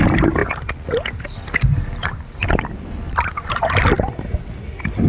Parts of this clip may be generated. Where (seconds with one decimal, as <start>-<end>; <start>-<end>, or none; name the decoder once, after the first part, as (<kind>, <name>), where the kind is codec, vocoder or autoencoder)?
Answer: none